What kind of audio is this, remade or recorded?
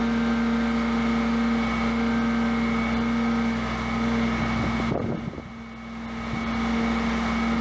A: recorded